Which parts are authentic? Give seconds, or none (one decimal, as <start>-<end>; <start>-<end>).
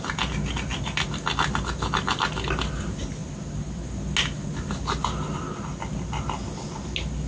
0.0-7.3